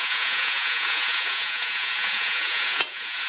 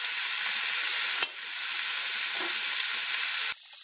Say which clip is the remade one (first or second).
first